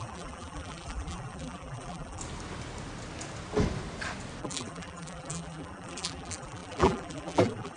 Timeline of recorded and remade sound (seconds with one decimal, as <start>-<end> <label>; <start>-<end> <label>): 0.0-2.2 remade; 2.2-4.4 recorded; 4.4-7.8 remade